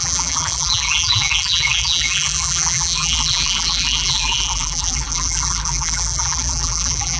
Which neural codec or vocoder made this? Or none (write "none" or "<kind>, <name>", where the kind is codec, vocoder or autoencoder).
vocoder, BigVGAN v2